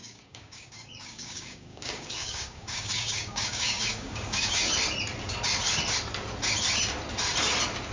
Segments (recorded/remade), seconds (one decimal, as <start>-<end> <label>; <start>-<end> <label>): 0.0-4.7 remade; 4.7-7.9 recorded